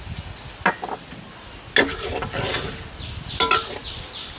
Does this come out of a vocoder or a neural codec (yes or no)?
no